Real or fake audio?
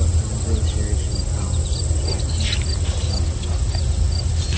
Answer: real